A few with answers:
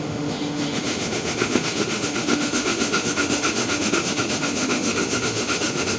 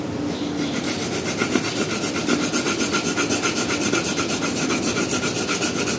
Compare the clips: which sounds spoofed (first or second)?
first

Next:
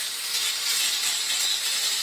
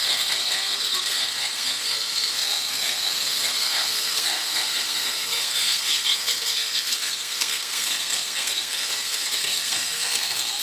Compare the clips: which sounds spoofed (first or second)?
second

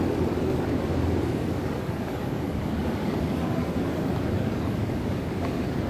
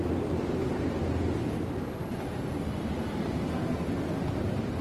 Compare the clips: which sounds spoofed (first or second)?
first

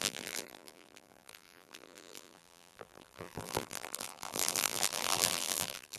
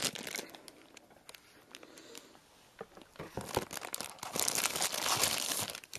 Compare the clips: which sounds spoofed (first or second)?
first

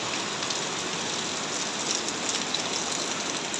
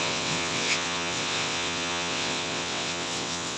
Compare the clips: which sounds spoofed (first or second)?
second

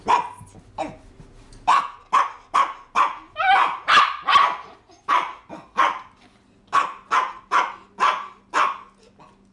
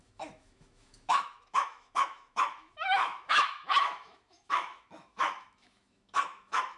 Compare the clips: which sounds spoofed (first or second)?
second